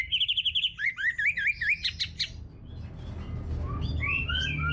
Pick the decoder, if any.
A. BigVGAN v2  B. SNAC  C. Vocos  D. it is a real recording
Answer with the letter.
D